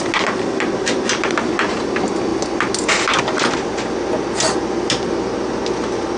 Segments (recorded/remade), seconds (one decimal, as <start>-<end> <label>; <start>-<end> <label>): 0.0-6.2 recorded